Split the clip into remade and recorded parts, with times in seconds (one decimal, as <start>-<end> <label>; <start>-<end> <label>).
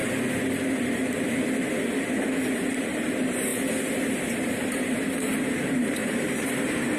0.0-2.4 recorded; 2.4-3.5 remade; 3.5-4.2 recorded; 4.2-7.0 remade